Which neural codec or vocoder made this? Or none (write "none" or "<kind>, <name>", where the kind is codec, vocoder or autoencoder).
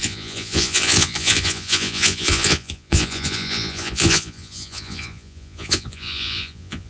vocoder, Vocos